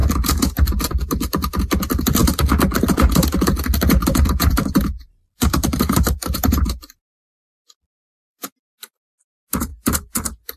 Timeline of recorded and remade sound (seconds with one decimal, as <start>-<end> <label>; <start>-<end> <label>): 0.0-4.4 recorded; 4.4-8.5 remade; 8.5-10.6 recorded